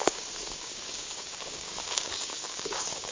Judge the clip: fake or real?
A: fake